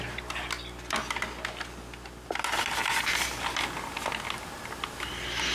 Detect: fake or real real